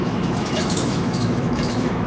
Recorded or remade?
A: remade